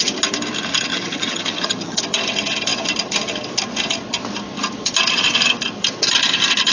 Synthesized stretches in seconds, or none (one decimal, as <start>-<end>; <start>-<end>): 0.9-2.0